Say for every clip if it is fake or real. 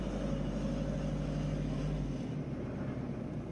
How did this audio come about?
real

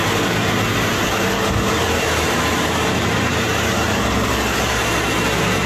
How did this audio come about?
fake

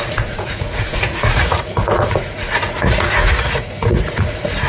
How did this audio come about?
fake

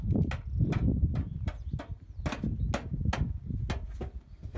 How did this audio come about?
real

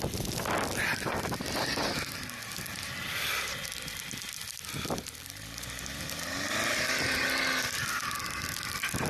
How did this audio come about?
real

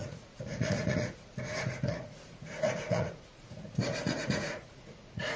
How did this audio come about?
fake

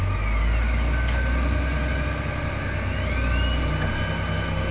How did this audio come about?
real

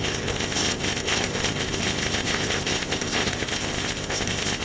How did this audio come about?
fake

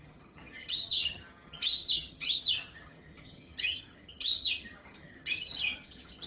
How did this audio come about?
fake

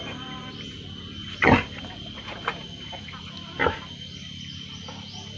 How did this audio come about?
real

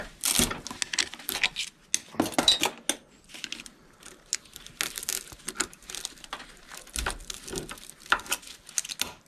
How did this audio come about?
real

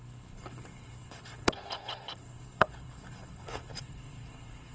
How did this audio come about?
fake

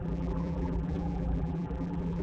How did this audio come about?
fake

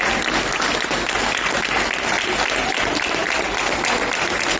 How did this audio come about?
real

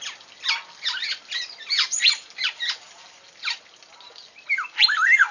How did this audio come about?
real